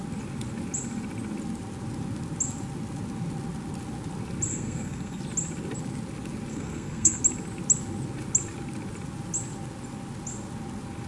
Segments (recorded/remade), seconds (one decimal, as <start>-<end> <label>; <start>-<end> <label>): 0.0-4.5 recorded; 4.5-5.2 remade; 5.2-6.5 recorded; 6.5-7.2 remade; 7.2-11.1 recorded

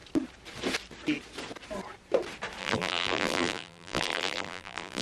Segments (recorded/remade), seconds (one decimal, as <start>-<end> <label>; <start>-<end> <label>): 0.0-2.6 recorded; 2.6-5.0 remade

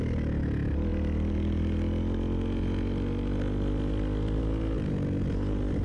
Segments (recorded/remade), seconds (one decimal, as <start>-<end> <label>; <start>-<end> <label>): 0.0-5.8 recorded

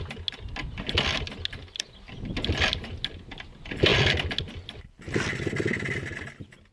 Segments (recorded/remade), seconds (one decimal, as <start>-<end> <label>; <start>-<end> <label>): 0.0-6.7 recorded